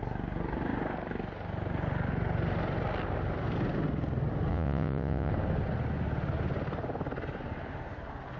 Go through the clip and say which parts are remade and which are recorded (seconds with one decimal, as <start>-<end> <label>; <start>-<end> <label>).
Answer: 0.0-4.5 recorded; 4.5-5.3 remade; 5.3-8.4 recorded